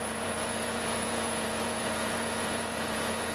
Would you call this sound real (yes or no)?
no